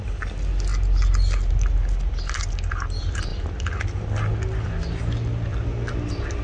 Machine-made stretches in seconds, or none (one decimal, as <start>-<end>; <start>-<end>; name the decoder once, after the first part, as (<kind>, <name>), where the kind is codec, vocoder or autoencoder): none